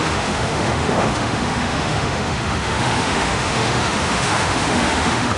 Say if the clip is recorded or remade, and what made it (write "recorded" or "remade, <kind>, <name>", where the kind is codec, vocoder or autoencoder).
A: remade, autoencoder, DAC-VAE